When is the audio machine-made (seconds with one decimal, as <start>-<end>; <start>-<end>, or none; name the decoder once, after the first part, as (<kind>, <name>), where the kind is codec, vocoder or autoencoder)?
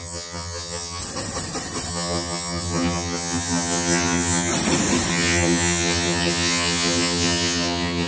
0.0-1.0 (vocoder, HiFi-GAN); 1.9-4.5; 5.1-8.1